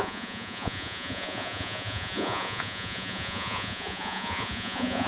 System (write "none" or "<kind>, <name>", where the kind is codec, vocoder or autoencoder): vocoder, Vocos